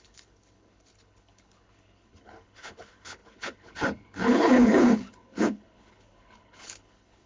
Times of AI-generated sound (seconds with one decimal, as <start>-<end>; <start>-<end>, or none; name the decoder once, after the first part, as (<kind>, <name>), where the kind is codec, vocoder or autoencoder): 0.0-7.3 (codec, HILCodec)